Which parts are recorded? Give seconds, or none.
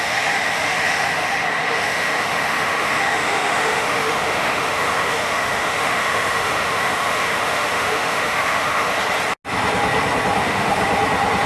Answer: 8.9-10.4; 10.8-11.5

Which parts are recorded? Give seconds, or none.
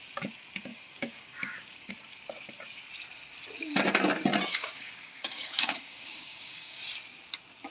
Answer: 0.0-0.7; 1.9-4.5; 6.8-7.7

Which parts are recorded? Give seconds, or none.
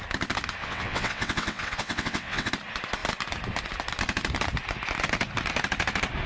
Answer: 0.0-0.6; 2.5-6.3